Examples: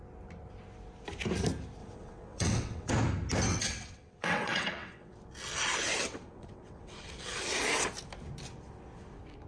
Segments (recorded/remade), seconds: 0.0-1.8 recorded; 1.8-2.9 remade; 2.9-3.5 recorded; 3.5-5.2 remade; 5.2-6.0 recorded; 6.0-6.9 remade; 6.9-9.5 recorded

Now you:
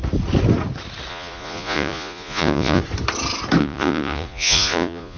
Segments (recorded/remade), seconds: 0.0-1.1 recorded; 1.1-2.8 remade; 2.8-3.6 recorded; 3.6-5.2 remade

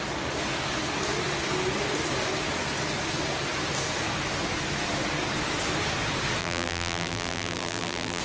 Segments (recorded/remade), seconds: 0.0-6.4 recorded; 6.4-8.2 remade

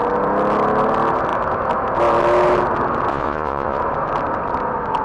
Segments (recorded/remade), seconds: 0.0-3.1 recorded; 3.1-3.8 remade; 3.8-5.0 recorded

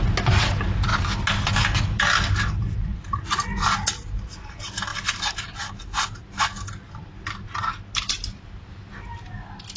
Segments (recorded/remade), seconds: 0.0-9.8 recorded